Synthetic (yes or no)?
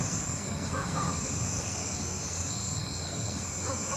yes